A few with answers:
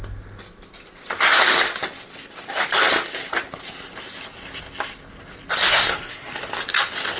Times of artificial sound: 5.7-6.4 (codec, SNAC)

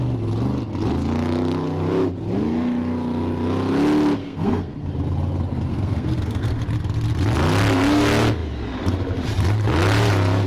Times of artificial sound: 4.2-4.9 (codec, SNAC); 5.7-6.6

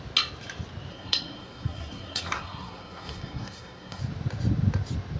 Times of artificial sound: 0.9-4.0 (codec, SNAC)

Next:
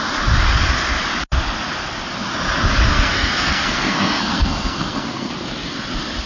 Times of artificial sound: 2.9-5.3 (codec, SNAC)

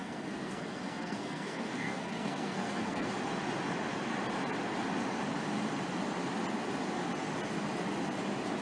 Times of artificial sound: 0.0-3.1 (codec, SNAC)

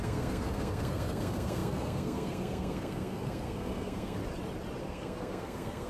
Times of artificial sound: 0.0-4.2 (codec, SNAC); 4.8-5.9

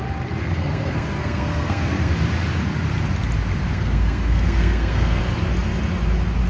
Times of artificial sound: 0.4-2.1 (codec, SNAC); 3.7-5.2

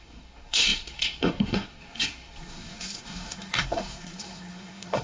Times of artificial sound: 0.0-5.0 (codec, SNAC)